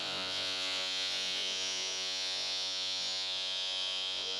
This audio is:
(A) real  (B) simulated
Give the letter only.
B